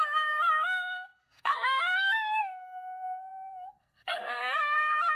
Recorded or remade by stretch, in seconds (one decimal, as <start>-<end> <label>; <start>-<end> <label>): 0.0-5.2 remade